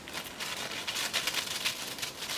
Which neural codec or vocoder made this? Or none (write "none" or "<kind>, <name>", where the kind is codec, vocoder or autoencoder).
none